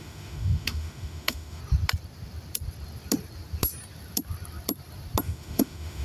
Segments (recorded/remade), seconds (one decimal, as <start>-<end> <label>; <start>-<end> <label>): 0.0-1.6 remade; 1.6-5.2 recorded; 5.2-6.0 remade